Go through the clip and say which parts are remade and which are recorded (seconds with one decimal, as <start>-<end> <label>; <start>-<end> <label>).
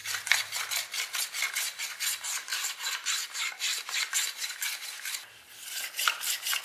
0.0-6.6 recorded